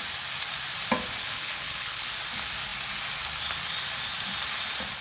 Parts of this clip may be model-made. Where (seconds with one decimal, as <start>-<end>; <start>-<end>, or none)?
1.2-2.1